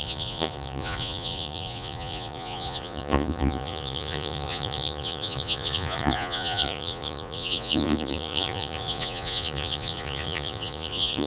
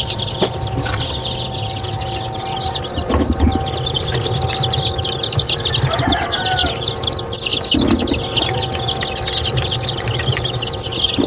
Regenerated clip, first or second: first